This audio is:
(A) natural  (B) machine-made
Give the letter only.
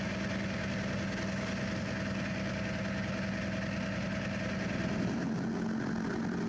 A